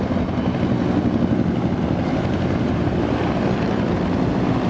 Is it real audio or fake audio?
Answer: real